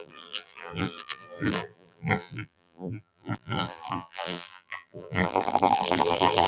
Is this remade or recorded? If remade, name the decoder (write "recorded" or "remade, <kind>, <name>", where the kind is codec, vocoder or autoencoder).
remade, vocoder, BigVGAN v2